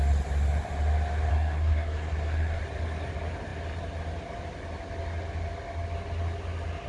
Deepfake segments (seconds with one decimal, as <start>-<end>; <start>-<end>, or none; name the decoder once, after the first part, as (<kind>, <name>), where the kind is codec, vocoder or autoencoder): 1.3-2.6 (codec, SNAC)